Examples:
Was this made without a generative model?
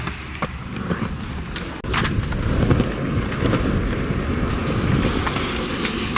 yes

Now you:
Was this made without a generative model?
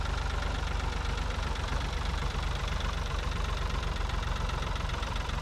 no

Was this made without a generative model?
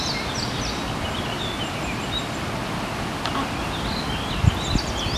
no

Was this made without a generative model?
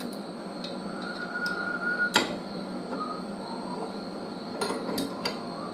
yes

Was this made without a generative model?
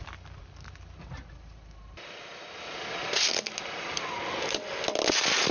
yes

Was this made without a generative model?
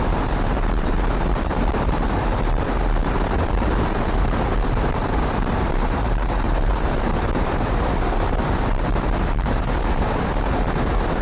no